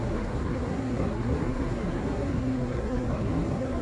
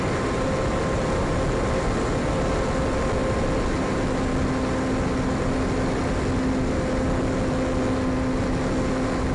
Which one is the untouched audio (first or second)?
second